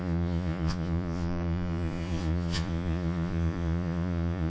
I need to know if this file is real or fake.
fake